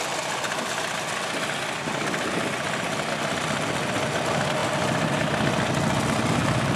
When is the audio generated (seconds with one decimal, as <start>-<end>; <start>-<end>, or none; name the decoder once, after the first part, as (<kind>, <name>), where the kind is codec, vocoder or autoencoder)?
none